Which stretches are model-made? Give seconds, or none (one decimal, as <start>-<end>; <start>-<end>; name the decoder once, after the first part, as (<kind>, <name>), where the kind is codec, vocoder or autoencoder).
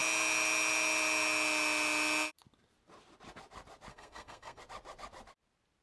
3.9-4.6 (codec, SNAC)